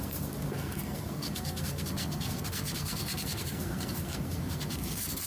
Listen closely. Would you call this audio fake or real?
fake